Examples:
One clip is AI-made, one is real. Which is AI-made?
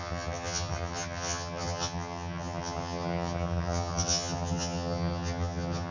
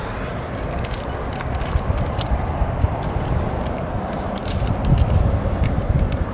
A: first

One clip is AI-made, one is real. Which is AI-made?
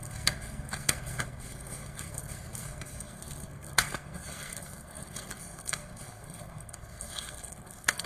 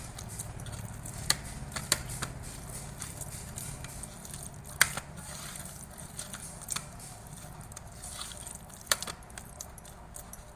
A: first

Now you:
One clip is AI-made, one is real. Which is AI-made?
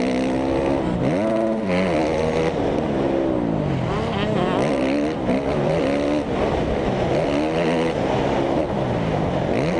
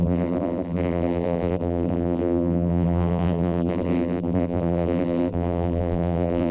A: second